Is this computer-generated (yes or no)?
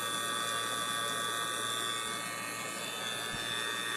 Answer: no